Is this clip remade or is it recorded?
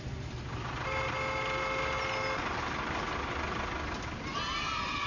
recorded